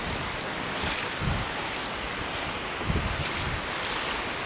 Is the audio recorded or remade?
recorded